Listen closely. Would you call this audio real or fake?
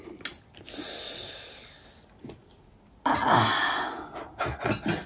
real